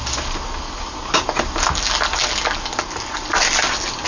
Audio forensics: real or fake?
real